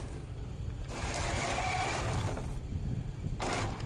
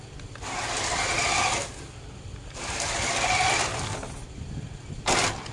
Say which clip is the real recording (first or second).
second